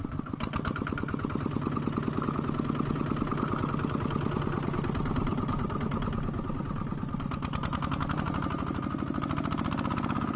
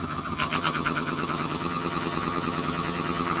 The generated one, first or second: second